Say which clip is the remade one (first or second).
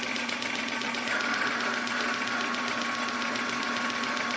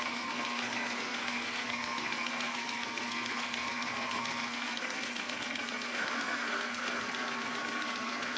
second